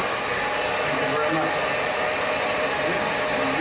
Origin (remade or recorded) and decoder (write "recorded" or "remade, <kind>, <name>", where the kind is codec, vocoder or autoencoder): recorded